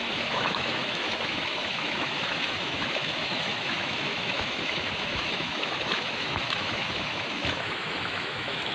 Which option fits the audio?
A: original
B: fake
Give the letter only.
B